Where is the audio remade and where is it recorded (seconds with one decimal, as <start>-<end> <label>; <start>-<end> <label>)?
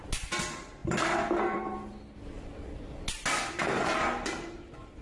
0.0-5.0 recorded